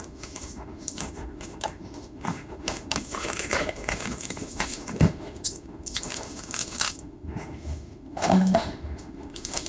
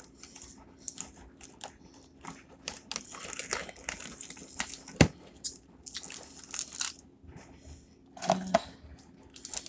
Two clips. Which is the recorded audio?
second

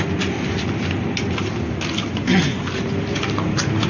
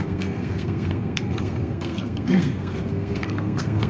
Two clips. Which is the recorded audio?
first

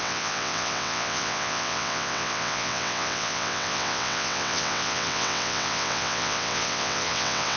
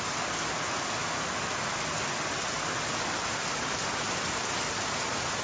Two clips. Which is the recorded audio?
second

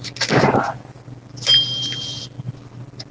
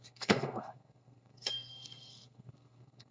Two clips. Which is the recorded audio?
first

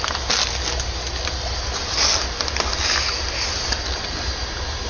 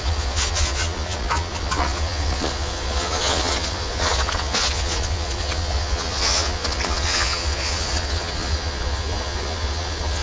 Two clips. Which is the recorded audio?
first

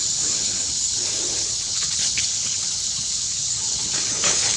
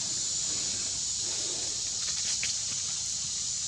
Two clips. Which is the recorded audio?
second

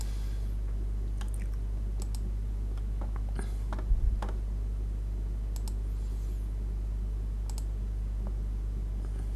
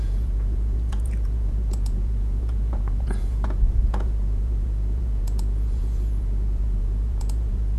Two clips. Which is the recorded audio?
first